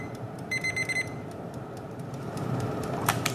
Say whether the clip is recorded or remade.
remade